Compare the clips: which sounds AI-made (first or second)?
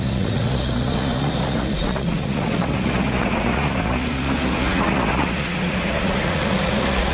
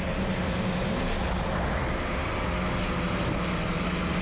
first